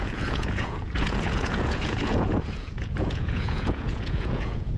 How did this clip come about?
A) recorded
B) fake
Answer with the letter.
B